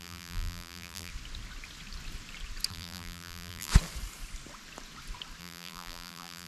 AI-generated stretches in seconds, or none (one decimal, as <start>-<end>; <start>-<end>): 0.0-1.1; 2.7-3.7; 5.4-6.5

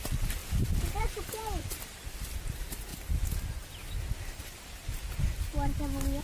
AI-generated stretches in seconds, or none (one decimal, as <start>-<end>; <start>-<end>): 0.0-2.9

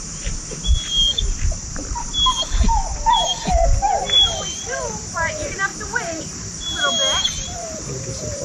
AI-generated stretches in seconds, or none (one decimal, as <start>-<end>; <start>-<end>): 0.0-5.7; 7.3-8.4

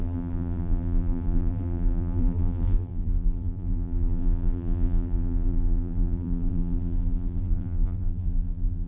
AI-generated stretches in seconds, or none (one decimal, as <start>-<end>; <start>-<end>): 0.0-8.9

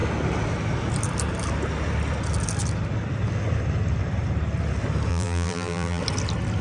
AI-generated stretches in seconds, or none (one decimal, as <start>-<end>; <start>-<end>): 5.1-6.0

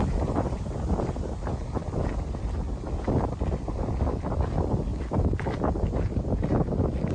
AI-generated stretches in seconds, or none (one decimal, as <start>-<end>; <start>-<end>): none